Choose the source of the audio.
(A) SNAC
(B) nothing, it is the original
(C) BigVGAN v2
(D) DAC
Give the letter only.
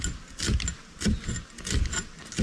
B